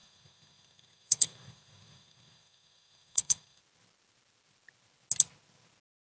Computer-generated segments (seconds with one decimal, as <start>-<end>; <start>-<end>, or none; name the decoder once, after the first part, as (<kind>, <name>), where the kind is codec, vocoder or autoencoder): 0.0-3.6 (codec, SNAC)